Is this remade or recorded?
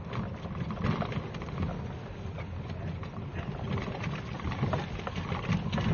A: recorded